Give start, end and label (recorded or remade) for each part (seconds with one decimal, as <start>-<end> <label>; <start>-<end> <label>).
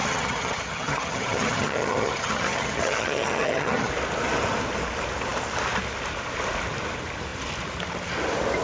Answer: 0.0-3.9 remade; 3.9-8.6 recorded